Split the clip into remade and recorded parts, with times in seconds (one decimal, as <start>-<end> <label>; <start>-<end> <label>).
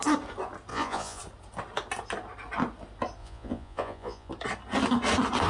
0.0-0.7 recorded; 0.7-1.2 remade; 1.2-3.2 recorded; 3.2-4.3 remade; 4.3-5.5 recorded